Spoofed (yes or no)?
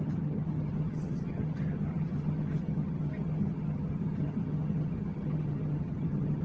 yes